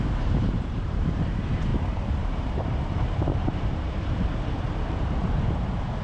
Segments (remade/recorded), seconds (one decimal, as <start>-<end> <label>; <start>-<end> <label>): 0.0-6.0 remade